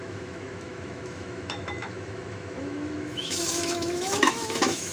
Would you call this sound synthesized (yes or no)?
yes